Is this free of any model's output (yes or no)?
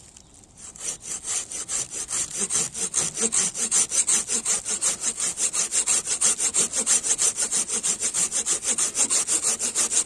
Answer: yes